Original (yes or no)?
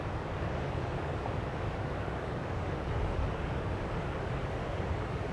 no